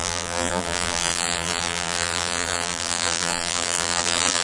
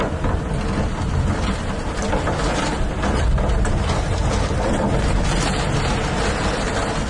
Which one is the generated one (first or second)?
first